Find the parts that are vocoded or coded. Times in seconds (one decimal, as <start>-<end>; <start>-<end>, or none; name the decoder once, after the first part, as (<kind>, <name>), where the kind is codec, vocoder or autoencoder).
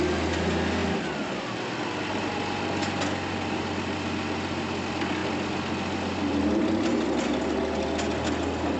none